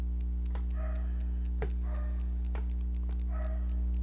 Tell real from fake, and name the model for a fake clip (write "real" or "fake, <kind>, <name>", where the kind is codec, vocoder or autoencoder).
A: real